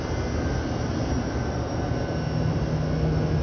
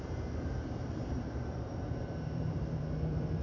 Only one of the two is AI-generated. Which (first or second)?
second